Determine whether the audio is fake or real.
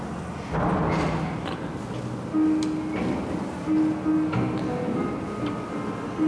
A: real